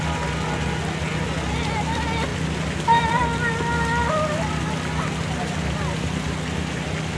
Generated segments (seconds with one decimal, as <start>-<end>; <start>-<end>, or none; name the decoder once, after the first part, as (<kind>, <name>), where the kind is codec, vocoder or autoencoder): none